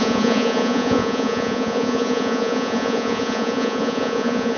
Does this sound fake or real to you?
fake